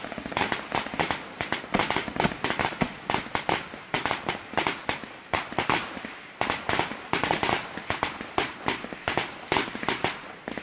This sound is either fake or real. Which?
real